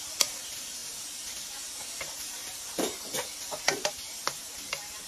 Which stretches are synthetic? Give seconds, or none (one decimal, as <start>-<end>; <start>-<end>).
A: 0.0-5.1